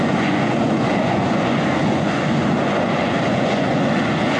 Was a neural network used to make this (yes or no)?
yes